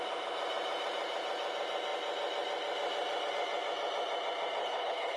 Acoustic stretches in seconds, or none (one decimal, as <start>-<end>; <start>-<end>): 0.0-4.6